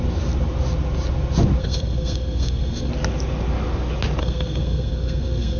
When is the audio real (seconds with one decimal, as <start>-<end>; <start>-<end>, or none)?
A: 0.0-1.6; 2.9-4.2